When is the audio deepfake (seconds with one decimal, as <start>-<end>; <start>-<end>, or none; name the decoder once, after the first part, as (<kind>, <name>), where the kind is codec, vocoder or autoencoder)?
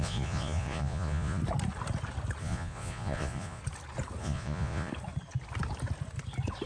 0.0-1.4 (vocoder, Vocos); 2.4-3.6; 4.2-4.9